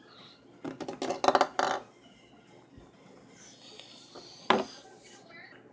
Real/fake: real